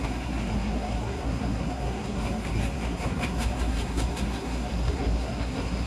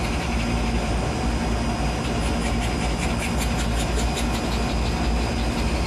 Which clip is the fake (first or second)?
first